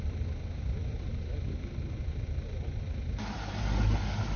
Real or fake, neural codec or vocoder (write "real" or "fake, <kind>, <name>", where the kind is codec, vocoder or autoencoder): real